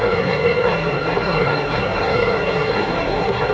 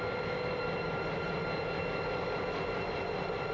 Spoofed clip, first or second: first